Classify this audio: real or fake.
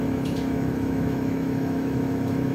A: fake